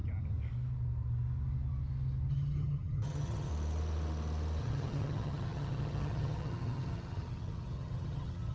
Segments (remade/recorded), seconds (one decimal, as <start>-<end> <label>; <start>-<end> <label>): 0.0-2.3 recorded; 2.3-3.5 remade; 3.5-4.6 recorded; 4.6-8.5 remade